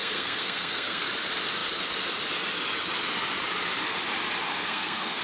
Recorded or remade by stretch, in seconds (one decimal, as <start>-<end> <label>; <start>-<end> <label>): 0.0-1.1 remade; 1.1-4.5 recorded; 4.5-5.2 remade